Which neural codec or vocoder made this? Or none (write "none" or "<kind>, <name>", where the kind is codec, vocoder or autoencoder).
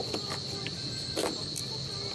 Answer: none